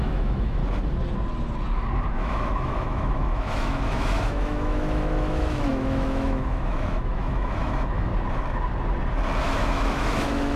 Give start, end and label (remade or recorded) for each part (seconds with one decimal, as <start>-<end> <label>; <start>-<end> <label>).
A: 0.0-0.6 remade; 0.6-2.1 recorded; 2.1-8.1 remade; 8.1-9.4 recorded; 9.4-10.6 remade